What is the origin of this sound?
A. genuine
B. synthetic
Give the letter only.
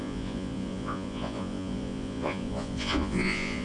B